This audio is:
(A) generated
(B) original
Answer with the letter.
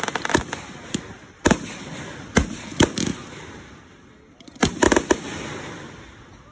B